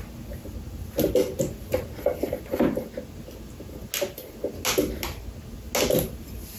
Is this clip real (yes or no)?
yes